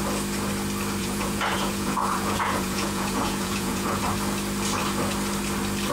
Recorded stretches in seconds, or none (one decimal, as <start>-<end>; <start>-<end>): 0.0-1.0; 4.0-5.9